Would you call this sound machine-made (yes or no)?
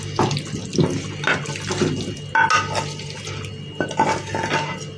no